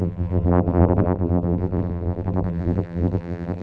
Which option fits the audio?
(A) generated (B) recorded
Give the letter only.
A